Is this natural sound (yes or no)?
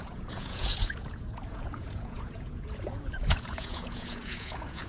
no